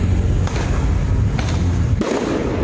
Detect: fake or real real